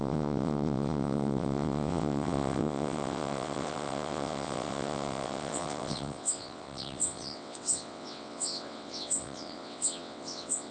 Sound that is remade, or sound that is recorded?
remade